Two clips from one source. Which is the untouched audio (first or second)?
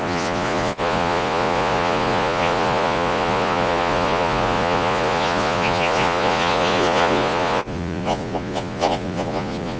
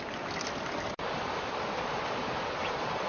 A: second